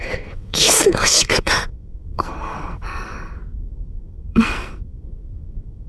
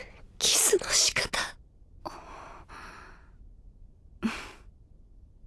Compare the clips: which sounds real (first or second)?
second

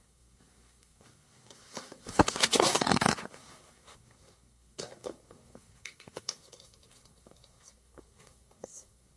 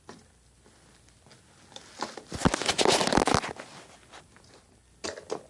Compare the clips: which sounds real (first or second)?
second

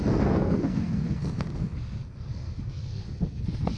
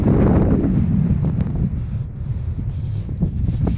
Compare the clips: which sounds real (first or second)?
second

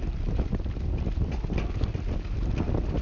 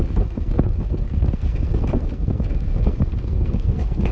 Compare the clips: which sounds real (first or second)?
first